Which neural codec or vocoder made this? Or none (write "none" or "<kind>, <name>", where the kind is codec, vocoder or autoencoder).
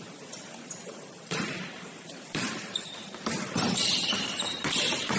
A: vocoder, BigVGAN v2